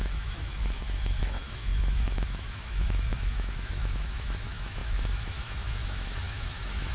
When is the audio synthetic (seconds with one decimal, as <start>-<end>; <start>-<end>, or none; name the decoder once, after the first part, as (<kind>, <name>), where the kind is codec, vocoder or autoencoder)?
0.0-6.9 (autoencoder, DAC-VAE)